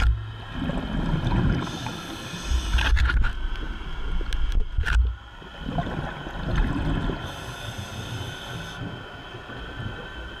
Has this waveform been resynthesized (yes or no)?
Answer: no